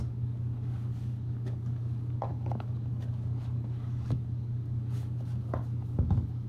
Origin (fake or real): fake